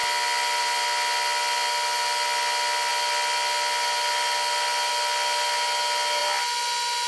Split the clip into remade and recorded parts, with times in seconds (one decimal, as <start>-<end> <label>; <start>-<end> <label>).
0.0-7.1 recorded